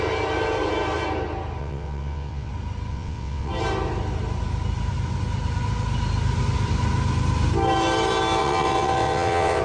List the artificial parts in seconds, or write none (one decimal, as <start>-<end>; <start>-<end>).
1.6-2.5; 2.9-3.5; 8.4-9.6